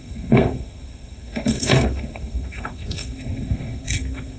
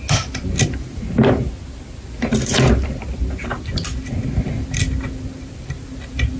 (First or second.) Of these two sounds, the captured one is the second